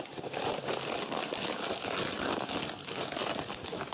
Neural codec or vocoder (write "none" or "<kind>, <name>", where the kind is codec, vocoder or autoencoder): none